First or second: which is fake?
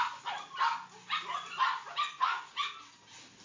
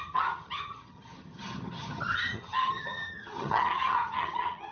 second